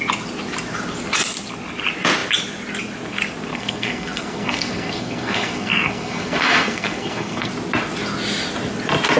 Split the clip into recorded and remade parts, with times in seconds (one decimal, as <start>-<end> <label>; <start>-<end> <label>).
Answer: 0.0-3.5 recorded; 3.5-7.5 remade; 7.5-9.2 recorded